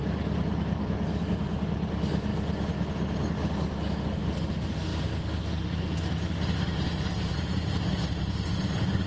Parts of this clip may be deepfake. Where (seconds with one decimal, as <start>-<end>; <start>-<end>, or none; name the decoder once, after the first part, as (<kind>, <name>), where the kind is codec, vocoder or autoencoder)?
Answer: none